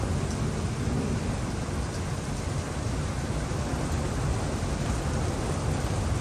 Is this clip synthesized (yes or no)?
no